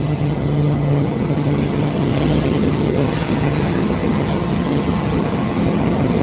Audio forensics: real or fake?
fake